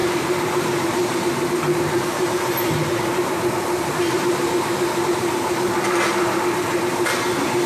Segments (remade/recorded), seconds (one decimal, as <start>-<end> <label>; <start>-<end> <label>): 0.0-4.3 remade; 4.3-7.7 recorded